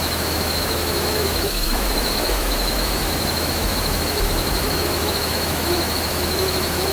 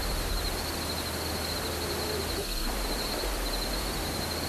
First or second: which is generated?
first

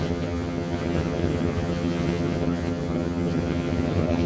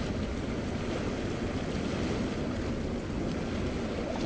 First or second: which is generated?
first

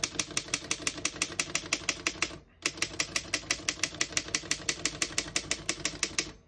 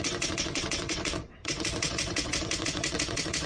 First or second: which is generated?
second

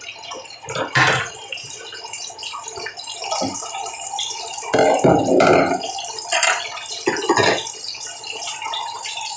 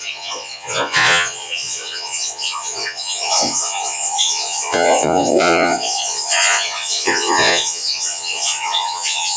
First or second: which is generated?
second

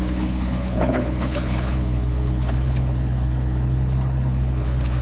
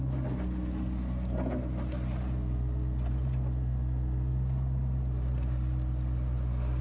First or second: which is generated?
first